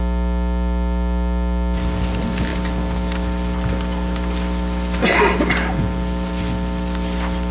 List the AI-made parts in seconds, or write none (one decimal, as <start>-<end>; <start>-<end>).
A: none